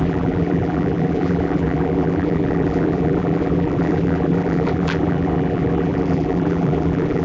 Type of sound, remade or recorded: remade